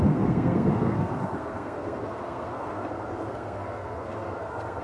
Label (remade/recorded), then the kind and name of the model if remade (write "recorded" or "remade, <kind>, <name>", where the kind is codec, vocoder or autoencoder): remade, codec, SNAC